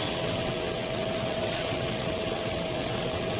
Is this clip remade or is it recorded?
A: remade